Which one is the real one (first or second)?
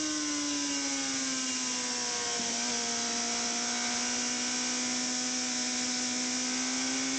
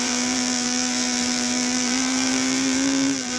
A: first